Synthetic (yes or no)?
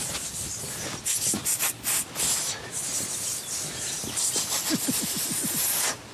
yes